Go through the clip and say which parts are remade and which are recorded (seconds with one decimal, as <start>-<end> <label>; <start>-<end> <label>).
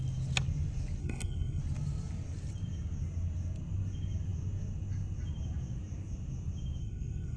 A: 0.0-1.0 recorded; 1.0-1.6 remade; 1.6-6.8 recorded; 6.8-7.4 remade